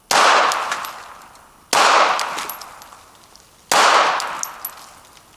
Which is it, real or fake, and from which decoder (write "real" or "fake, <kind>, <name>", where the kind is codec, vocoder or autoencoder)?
real